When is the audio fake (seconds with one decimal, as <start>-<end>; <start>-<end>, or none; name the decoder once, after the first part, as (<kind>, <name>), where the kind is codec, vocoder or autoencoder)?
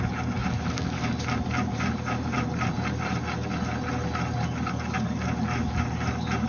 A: 0.4-3.1 (vocoder, BigVGAN v2)